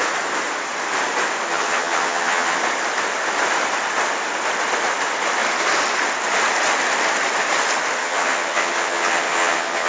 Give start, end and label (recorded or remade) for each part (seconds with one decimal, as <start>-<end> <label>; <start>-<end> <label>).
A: 0.0-1.5 recorded; 1.5-2.6 remade; 2.6-8.0 recorded; 8.0-9.9 remade